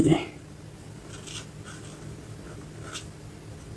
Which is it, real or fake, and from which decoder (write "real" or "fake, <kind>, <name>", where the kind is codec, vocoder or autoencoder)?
real